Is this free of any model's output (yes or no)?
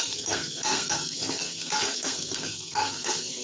no